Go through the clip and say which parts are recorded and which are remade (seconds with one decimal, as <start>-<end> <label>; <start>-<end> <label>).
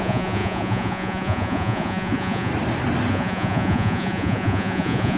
0.0-2.5 remade; 2.5-3.1 recorded; 3.1-5.2 remade